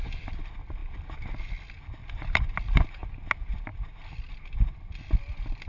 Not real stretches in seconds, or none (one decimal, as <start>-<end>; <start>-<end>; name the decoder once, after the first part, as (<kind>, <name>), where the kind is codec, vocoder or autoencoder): none